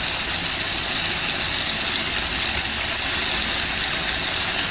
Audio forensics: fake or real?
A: real